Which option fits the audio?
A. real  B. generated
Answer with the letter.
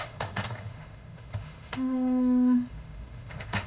B